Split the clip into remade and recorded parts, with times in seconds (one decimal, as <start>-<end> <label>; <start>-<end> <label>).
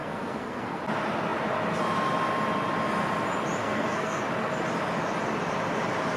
0.0-0.8 remade; 0.8-3.6 recorded; 3.6-4.2 remade; 4.2-6.2 recorded